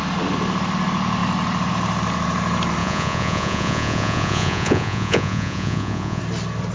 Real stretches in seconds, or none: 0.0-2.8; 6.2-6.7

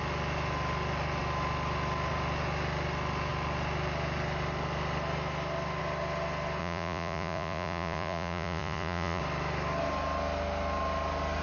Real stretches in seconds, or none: 0.0-6.6; 9.2-11.4